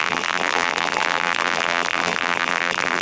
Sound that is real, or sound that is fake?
fake